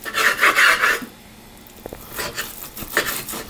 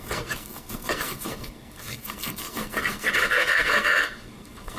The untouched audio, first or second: first